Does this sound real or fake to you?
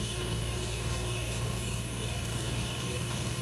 fake